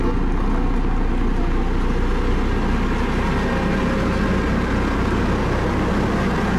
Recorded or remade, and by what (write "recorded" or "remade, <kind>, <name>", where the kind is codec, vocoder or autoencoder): recorded